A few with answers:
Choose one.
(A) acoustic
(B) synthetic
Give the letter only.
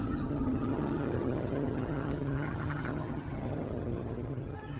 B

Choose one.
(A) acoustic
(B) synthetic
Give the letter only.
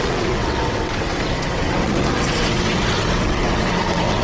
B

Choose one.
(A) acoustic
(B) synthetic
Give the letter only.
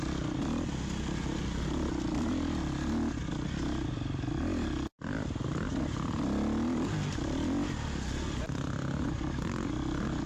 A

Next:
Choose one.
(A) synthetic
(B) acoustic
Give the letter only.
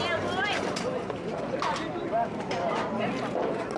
B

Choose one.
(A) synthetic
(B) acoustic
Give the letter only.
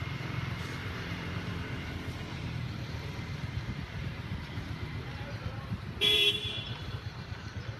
A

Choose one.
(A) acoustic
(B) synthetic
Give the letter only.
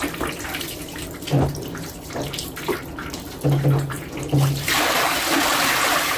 A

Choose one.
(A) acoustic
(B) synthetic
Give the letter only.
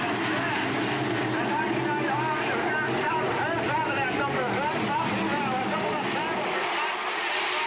A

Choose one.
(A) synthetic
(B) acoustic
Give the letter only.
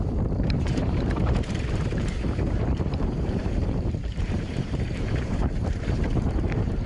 A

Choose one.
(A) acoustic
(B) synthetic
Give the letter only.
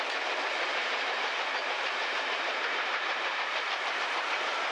B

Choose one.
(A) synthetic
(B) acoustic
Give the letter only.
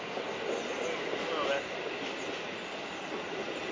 B